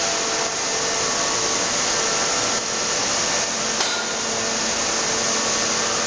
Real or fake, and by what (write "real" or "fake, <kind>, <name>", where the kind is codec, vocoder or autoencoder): real